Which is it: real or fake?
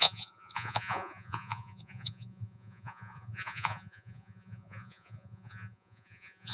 fake